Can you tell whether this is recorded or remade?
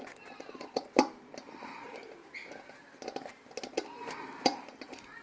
recorded